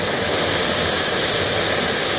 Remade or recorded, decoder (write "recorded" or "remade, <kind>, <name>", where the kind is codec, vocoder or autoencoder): recorded